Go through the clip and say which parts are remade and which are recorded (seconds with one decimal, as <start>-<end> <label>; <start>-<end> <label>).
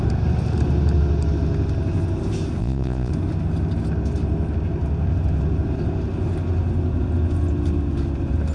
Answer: 0.0-2.6 recorded; 2.6-3.1 remade; 3.1-8.5 recorded